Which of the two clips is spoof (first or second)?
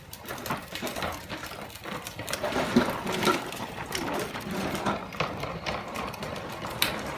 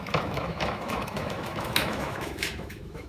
second